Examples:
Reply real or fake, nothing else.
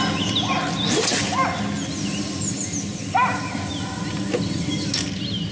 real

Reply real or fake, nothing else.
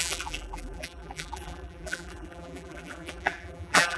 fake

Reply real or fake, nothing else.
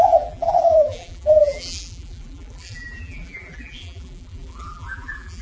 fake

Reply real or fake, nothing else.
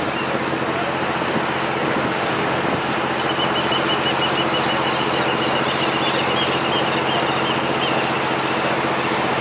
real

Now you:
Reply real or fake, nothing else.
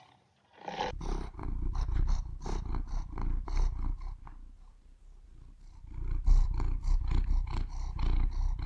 fake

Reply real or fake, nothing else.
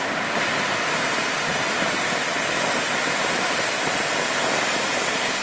real